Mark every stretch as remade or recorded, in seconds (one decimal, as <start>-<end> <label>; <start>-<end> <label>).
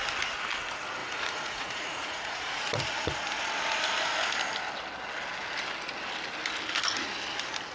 0.0-1.0 recorded; 1.0-2.6 remade; 2.6-7.7 recorded